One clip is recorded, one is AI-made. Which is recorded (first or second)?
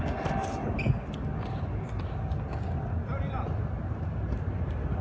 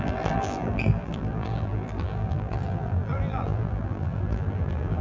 first